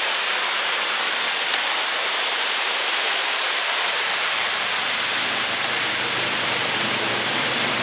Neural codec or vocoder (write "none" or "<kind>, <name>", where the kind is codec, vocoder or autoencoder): vocoder, BigVGAN v2